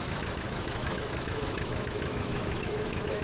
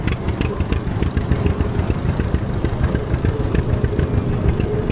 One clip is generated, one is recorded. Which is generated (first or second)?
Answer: first